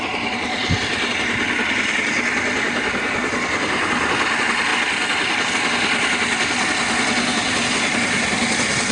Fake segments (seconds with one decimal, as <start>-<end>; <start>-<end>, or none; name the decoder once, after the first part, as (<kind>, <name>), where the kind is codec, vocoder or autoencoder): none